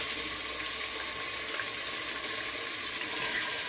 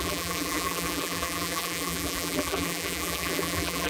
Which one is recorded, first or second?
first